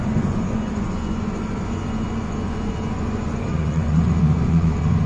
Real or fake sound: fake